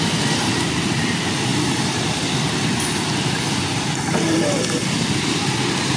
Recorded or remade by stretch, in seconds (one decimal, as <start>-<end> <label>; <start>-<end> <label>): 0.0-6.0 recorded